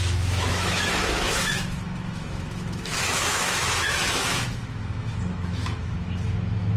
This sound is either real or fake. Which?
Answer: fake